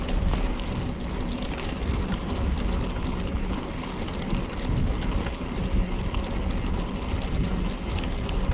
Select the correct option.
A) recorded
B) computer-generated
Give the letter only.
A